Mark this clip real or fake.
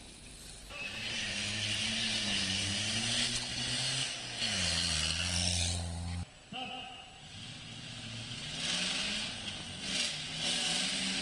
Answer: real